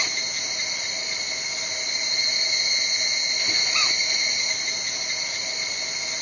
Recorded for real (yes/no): yes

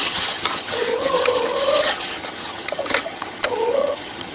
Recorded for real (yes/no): no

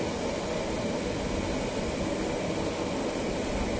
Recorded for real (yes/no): yes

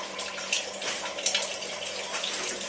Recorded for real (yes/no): yes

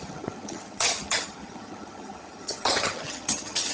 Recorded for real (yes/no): no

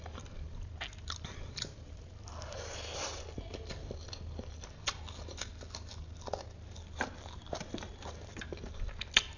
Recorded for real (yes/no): yes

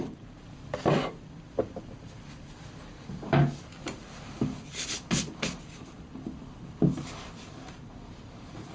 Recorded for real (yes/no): yes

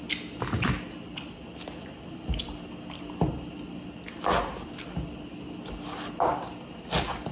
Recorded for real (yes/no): yes